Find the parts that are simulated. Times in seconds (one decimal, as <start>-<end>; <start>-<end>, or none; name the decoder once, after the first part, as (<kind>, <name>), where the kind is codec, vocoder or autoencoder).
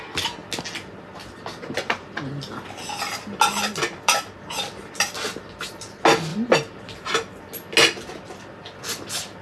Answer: none